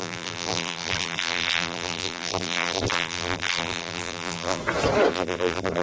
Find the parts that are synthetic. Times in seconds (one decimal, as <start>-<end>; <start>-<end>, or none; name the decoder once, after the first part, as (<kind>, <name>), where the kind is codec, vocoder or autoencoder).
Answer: 0.0-4.6 (vocoder, BigVGAN v2); 5.1-5.8